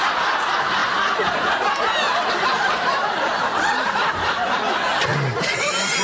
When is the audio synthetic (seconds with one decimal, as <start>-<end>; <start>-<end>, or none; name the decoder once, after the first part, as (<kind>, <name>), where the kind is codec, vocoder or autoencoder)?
2.5-3.9 (vocoder, BigVGAN v2); 5.1-5.6